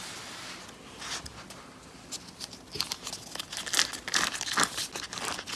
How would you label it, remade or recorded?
recorded